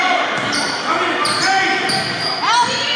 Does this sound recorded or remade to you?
recorded